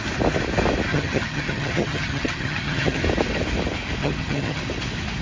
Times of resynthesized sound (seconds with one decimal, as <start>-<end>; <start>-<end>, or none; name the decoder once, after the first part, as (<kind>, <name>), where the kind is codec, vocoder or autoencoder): 0.9-3.0 (vocoder, HiFi-GAN); 4.0-4.6